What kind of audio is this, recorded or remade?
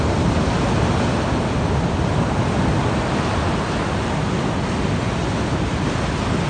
recorded